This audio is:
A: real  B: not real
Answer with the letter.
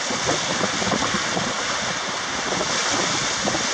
A